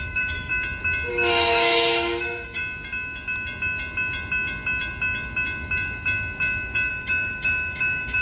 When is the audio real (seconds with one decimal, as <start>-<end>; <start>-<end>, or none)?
0.5-1.1; 2.6-6.9